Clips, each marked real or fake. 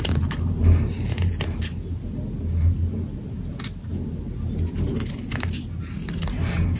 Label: real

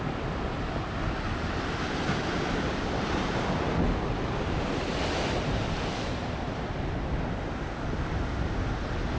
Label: real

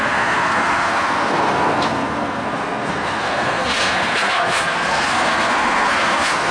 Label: fake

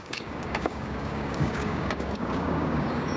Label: fake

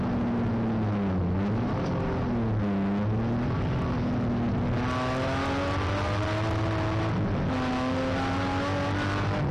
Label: real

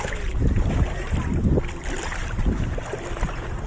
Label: real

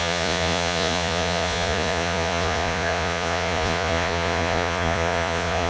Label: fake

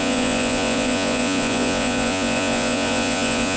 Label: fake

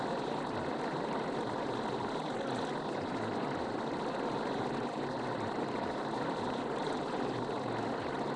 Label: real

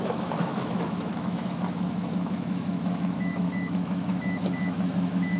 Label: fake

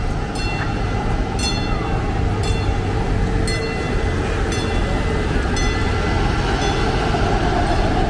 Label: real